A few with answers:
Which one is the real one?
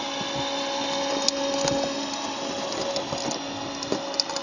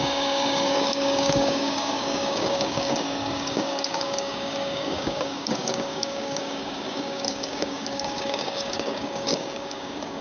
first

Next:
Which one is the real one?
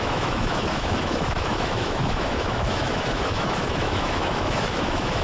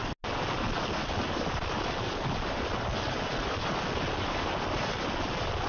second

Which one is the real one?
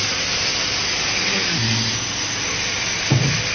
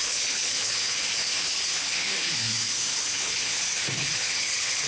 first